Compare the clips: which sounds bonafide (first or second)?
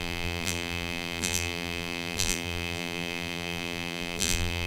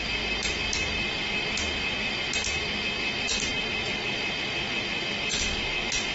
second